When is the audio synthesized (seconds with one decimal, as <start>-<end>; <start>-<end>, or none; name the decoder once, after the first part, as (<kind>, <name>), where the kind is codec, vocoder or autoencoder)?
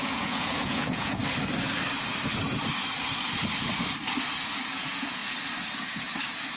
0.0-1.2 (vocoder, Vocos); 4.7-5.2